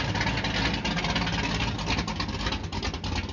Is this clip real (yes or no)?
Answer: yes